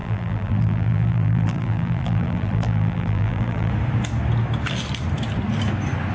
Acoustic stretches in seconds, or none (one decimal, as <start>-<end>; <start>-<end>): 3.7-6.1